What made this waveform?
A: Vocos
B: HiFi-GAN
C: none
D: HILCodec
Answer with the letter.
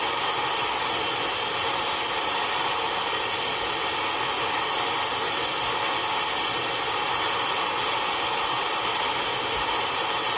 C